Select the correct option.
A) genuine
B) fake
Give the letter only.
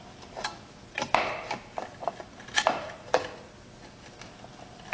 A